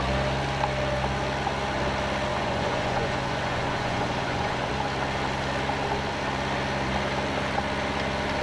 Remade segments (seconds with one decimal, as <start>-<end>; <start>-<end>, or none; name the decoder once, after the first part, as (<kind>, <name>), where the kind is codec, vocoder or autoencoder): 2.3-4.7 (vocoder, Vocos)